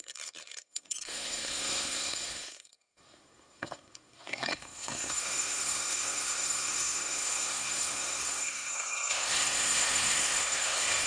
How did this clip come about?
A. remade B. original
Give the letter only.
A